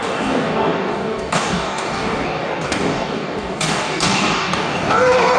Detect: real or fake fake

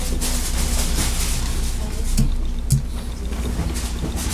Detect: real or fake real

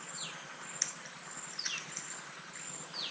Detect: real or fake real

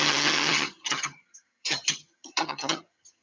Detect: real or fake fake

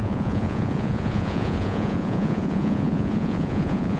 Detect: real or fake fake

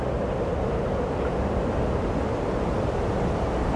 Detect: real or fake real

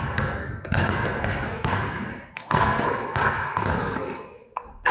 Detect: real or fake fake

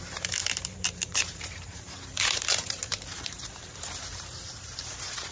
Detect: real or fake fake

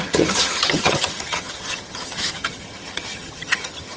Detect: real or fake fake